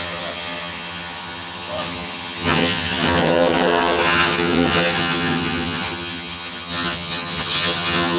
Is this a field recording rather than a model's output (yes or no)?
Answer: no